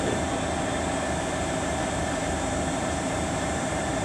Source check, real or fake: fake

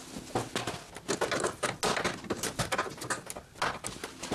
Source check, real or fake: real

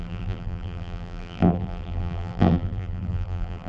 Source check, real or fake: fake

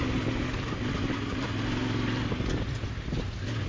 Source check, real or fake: real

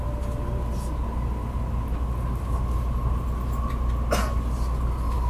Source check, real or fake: real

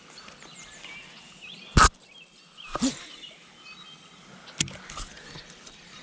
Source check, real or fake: real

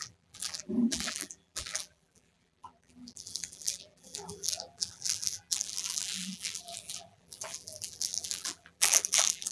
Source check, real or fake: fake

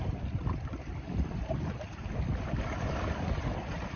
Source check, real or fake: fake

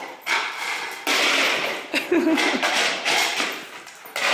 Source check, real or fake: real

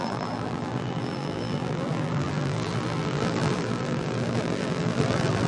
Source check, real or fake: fake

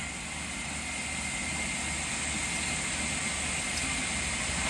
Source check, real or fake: real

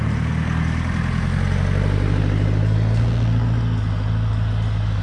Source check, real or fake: real